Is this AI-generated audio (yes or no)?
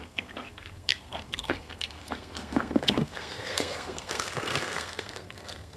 yes